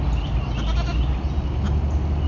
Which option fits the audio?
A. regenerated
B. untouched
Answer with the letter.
B